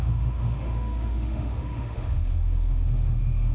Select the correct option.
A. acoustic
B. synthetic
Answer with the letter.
B